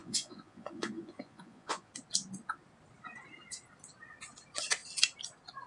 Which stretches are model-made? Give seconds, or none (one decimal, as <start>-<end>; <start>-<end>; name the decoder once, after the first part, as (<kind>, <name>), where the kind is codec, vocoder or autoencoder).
0.0-1.9 (vocoder, Vocos)